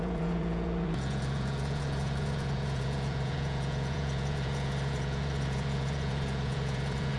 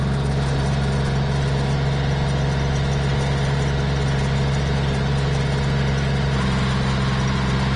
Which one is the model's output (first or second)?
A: first